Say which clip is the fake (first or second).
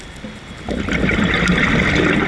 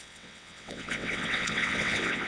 second